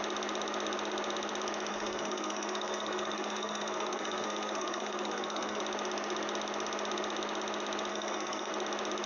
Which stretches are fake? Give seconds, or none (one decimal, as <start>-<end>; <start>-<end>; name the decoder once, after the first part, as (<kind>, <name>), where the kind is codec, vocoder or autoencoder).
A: 1.7-5.6 (codec, SNAC); 7.9-8.5